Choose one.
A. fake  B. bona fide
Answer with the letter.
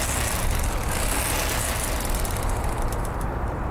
B